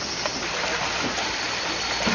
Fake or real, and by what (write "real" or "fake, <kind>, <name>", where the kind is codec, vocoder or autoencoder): real